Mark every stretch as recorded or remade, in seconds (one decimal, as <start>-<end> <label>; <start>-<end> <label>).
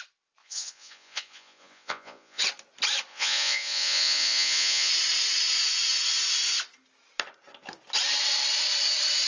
0.0-0.4 recorded; 0.4-2.4 remade; 2.4-3.1 recorded; 3.1-4.9 remade; 4.9-9.3 recorded